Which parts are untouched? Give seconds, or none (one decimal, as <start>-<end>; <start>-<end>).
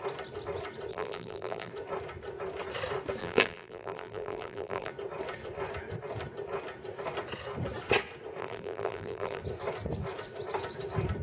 0.0-0.9; 1.7-3.2; 4.9-8.4; 9.4-11.2